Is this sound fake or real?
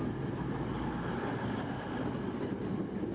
real